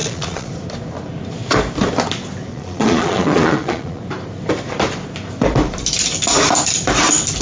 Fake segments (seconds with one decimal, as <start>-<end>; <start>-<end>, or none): 0.0-0.5; 2.5-4.0